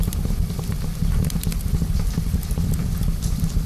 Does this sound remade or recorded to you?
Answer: remade